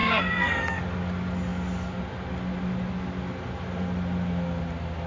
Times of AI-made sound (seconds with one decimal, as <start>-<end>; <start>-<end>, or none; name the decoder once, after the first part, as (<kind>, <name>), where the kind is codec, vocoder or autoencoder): 0.0-0.8 (codec, SNAC)